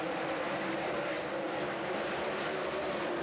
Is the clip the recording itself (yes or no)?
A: no